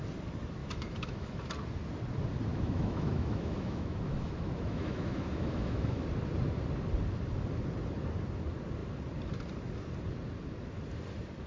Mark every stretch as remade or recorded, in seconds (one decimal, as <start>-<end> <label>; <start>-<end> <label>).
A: 0.0-0.6 recorded; 0.6-1.4 remade; 1.4-2.5 recorded; 2.5-6.0 remade; 6.0-11.5 recorded